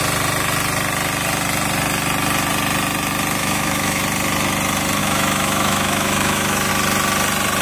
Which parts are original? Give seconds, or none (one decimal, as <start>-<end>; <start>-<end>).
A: 0.0-3.4; 4.0-5.0; 6.7-7.6